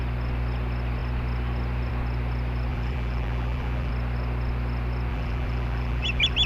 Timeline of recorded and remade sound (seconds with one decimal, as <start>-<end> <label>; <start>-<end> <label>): 0.0-2.7 recorded; 2.7-3.9 remade; 3.9-5.1 recorded; 5.1-6.5 remade